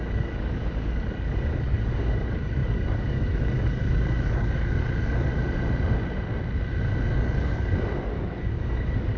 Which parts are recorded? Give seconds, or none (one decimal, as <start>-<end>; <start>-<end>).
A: 5.3-7.1